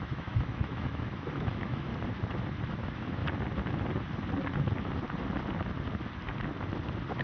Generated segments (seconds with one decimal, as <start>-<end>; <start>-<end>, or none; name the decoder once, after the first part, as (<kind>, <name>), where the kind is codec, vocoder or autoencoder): 0.0-1.9 (autoencoder, DAC-VAE); 2.7-3.2